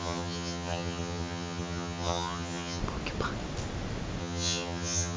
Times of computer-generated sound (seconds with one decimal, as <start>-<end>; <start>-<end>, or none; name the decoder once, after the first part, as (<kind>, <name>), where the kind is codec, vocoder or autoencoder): 0.0-2.8 (vocoder, HiFi-GAN); 4.2-5.2